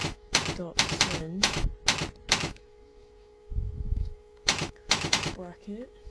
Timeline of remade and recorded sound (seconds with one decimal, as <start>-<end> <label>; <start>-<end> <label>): 0.0-0.4 remade; 0.4-1.2 recorded; 1.2-1.7 remade; 1.7-2.4 recorded; 2.4-6.1 remade